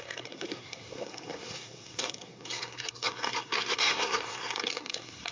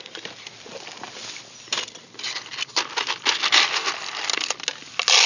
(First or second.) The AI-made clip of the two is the first